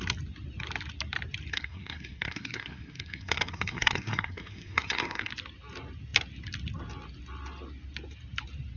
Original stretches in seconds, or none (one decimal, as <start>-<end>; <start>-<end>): 0.0-1.5; 5.3-8.8